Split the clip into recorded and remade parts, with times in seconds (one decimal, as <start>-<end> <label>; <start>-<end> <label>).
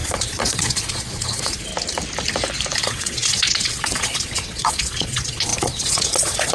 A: 0.0-1.7 remade; 1.7-2.8 recorded; 2.8-6.5 remade